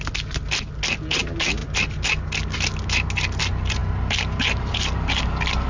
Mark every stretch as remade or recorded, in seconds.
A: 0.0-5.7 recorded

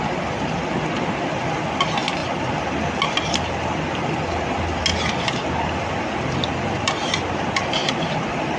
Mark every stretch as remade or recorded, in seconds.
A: 0.0-8.6 recorded

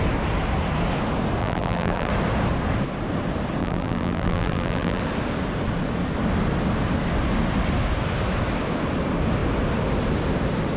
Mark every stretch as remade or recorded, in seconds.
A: 0.0-1.4 recorded; 1.4-2.1 remade; 2.1-3.6 recorded; 3.6-5.0 remade; 5.0-10.8 recorded

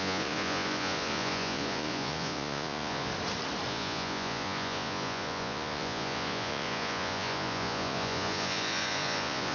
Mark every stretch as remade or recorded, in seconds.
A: 0.0-3.1 remade; 3.1-3.7 recorded; 3.7-9.5 remade